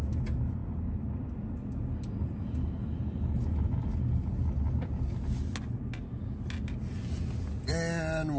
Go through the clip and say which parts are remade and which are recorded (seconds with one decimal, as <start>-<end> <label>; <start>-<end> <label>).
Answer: 0.0-8.4 recorded